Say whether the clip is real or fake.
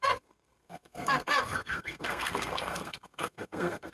fake